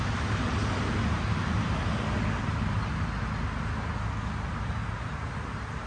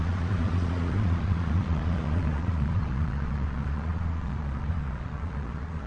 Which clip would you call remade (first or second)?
second